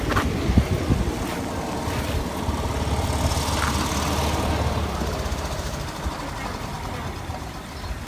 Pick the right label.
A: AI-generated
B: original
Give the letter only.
B